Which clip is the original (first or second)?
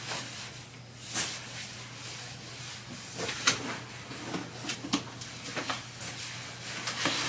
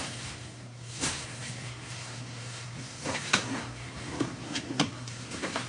first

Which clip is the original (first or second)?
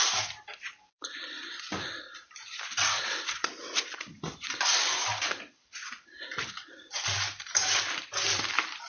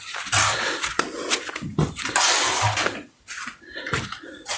second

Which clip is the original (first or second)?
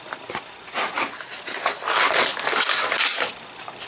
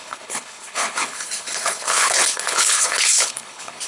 first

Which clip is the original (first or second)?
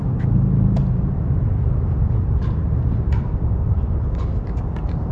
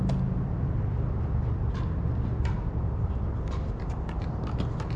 second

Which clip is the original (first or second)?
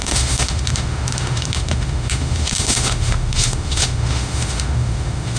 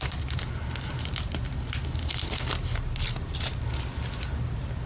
second